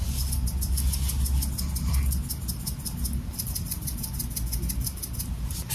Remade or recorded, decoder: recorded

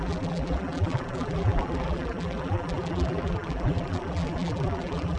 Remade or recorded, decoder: remade, vocoder, BigVGAN v2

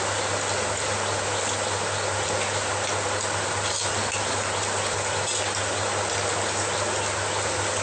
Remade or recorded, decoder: recorded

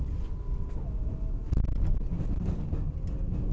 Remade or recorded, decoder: recorded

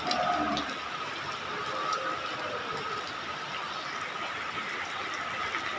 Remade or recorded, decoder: recorded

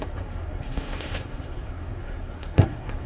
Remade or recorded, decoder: remade, codec, SNAC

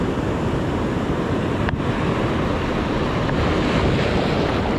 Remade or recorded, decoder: recorded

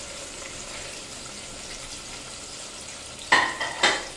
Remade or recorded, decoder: recorded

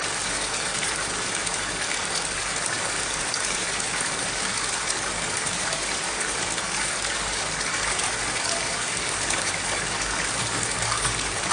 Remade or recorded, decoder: remade, codec, DAC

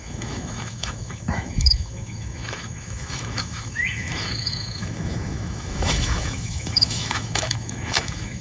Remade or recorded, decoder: remade, autoencoder, DAC-VAE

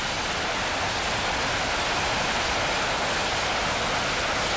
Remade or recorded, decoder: recorded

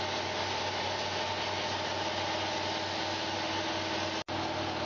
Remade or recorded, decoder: recorded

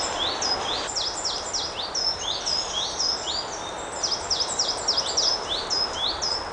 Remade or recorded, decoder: recorded